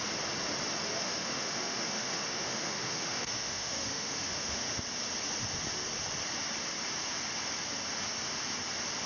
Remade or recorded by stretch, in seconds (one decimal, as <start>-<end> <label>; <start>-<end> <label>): 0.0-1.0 recorded; 1.0-4.8 remade; 4.8-9.1 recorded